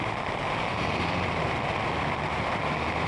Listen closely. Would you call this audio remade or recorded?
recorded